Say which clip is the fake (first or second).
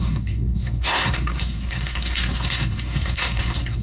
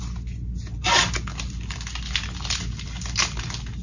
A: first